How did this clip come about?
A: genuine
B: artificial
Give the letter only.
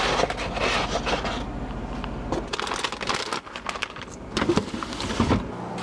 A